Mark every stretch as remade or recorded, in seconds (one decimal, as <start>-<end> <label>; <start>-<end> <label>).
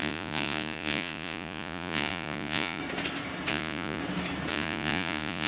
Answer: 0.0-2.8 remade; 2.8-3.5 recorded; 3.5-4.0 remade; 4.0-4.5 recorded; 4.5-5.5 remade